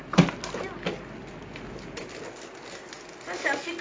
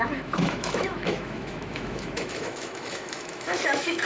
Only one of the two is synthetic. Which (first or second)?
second